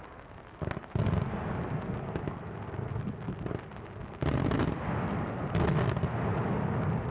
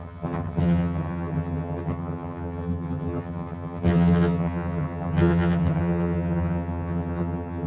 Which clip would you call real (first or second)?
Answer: first